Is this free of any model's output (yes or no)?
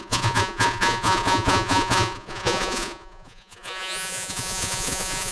no